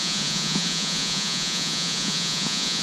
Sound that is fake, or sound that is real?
fake